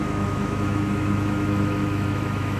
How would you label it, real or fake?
fake